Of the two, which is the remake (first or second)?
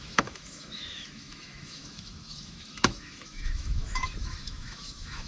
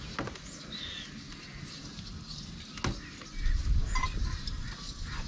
first